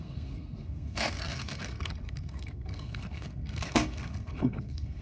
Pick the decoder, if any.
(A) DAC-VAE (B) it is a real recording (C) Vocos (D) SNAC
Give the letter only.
D